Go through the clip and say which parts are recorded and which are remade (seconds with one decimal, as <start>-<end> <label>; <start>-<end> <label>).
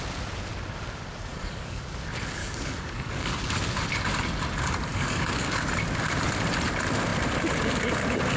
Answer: 0.0-1.3 recorded; 1.3-1.8 remade; 1.8-2.4 recorded; 2.4-3.4 remade; 3.4-4.9 recorded; 4.9-5.6 remade; 5.6-8.4 recorded